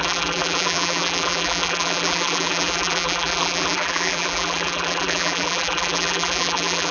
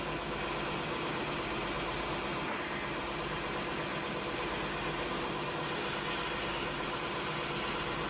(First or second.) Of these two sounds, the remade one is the first